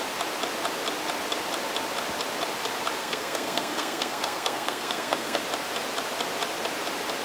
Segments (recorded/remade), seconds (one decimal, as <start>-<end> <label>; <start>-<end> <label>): 0.0-3.0 recorded; 3.0-5.4 remade; 5.4-7.2 recorded